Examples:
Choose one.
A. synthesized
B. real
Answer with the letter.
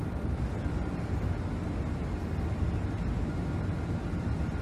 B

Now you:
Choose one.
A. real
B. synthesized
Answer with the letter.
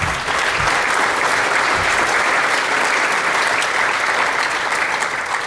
B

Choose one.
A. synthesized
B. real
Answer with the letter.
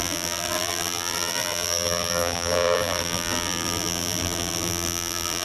A